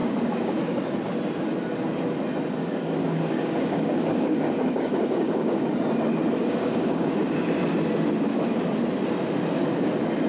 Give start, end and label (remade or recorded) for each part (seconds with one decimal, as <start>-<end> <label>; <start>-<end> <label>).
0.0-0.6 remade; 0.6-2.6 recorded; 2.6-5.7 remade; 5.7-6.4 recorded; 6.4-7.4 remade; 7.4-10.3 recorded